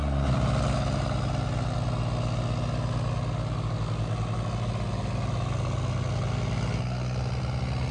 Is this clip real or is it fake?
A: real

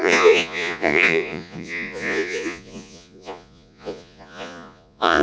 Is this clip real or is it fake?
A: fake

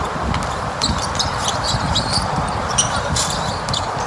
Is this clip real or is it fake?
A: fake